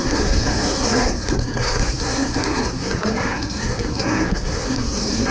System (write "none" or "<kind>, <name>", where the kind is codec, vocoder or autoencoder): codec, SNAC